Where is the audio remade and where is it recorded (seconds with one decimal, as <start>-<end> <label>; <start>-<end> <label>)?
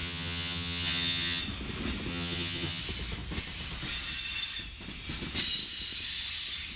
0.0-1.4 remade; 1.4-2.1 recorded; 2.1-2.8 remade; 2.8-6.8 recorded